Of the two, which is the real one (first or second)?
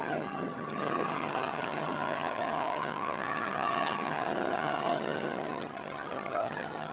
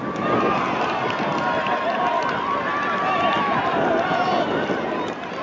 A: second